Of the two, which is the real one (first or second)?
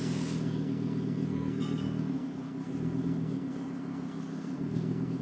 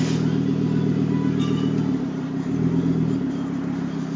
second